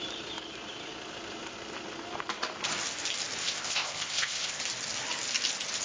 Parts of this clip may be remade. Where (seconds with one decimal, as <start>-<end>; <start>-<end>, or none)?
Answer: 3.4-4.6